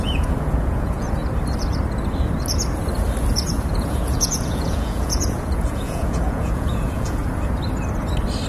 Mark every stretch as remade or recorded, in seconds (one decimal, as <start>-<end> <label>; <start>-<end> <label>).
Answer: 0.0-1.2 remade; 1.2-3.7 recorded; 3.7-7.2 remade; 7.2-8.5 recorded